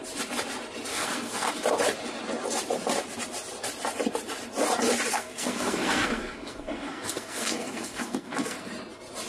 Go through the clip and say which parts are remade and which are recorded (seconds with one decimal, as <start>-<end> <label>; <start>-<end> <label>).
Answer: 0.0-0.9 recorded; 0.9-1.5 remade; 1.5-5.1 recorded; 5.1-8.7 remade; 8.7-9.3 recorded